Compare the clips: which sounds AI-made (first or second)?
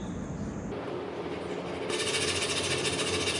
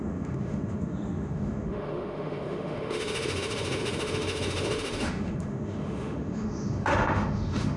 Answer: second